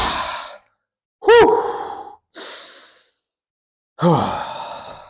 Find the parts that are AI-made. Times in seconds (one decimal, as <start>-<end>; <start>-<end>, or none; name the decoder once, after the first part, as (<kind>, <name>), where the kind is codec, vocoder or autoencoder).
none